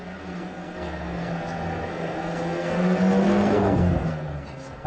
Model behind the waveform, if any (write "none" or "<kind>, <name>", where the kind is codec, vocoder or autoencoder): codec, SNAC